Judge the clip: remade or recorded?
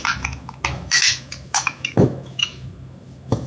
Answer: remade